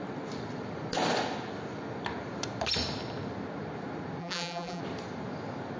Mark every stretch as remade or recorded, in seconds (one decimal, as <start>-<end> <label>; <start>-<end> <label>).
0.0-4.2 recorded; 4.2-4.8 remade; 4.8-5.8 recorded